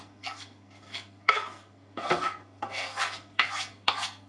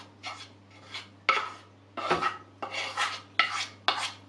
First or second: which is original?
second